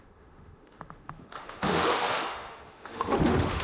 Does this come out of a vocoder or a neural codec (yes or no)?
yes